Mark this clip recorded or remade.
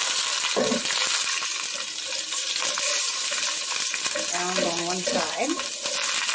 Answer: recorded